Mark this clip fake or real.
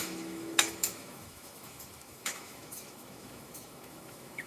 fake